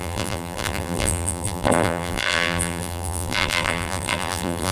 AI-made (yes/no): yes